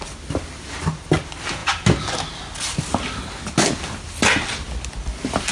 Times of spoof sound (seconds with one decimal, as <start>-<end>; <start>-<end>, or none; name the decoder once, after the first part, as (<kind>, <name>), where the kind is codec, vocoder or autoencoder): none